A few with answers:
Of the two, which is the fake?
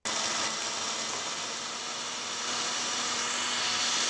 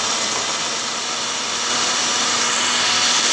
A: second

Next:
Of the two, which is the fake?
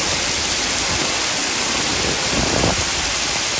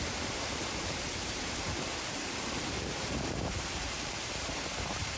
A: second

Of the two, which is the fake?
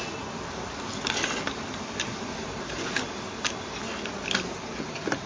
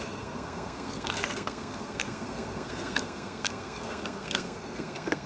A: second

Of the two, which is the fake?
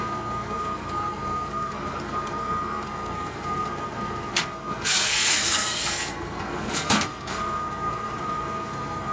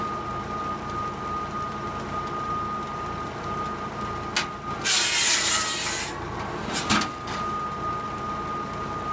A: first